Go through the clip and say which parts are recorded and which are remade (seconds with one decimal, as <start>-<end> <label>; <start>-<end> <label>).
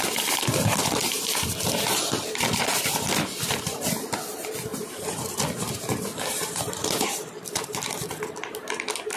0.0-1.5 remade; 1.5-2.6 recorded; 2.6-9.2 remade